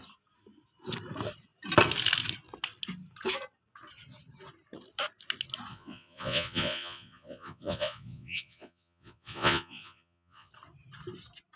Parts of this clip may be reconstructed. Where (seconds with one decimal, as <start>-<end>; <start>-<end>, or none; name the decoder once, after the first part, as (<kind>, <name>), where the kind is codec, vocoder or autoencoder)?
5.7-10.5 (vocoder, Vocos)